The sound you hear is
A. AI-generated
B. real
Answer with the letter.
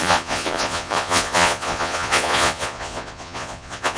A